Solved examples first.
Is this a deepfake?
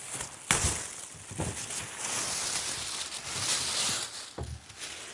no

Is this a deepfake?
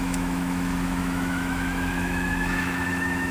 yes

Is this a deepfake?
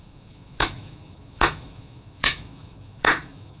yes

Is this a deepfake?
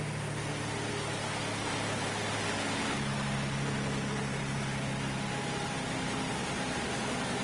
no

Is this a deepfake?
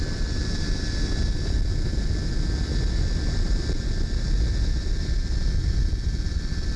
no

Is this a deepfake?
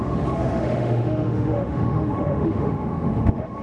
yes